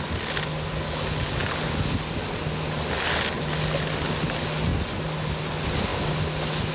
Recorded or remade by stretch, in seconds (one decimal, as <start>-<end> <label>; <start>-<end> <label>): 0.0-6.7 recorded